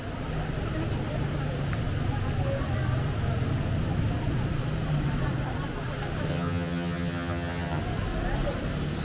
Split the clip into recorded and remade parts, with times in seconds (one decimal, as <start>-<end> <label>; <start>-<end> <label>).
0.0-6.3 recorded; 6.3-7.8 remade; 7.8-9.0 recorded